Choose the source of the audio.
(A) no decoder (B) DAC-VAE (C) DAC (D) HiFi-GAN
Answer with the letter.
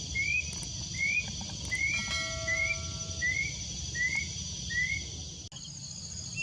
A